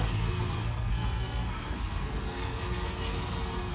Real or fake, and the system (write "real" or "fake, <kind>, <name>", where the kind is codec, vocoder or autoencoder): fake, codec, SNAC